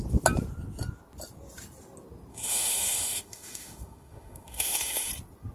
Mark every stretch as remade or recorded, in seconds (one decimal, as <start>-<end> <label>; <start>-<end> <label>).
0.0-2.3 recorded; 2.3-5.1 remade; 5.1-5.5 recorded